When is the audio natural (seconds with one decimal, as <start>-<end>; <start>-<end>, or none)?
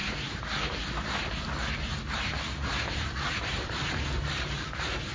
1.4-1.9